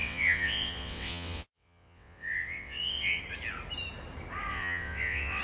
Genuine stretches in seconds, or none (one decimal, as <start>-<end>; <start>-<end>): 3.2-4.5

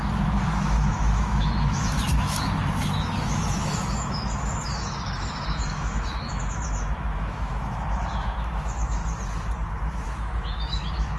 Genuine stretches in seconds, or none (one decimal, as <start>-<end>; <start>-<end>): 9.0-9.7

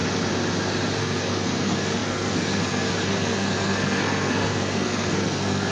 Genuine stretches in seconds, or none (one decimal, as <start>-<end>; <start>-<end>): 0.0-1.0

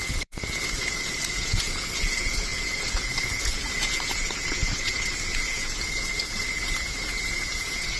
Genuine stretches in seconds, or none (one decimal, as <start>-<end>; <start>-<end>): none

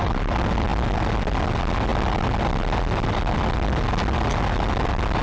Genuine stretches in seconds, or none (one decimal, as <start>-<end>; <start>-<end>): 0.0-5.2